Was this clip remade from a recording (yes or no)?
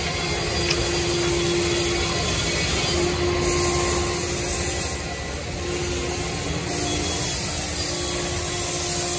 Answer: no